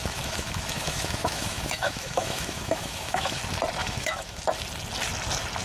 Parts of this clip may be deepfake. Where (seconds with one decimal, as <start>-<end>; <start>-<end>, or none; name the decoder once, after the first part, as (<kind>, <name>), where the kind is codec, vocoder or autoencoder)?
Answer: 0.0-3.4 (autoencoder, DAC-VAE); 3.8-4.4